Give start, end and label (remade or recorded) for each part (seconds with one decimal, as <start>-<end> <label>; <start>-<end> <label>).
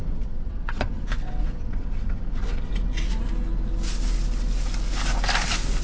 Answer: 0.0-2.7 remade; 2.7-5.8 recorded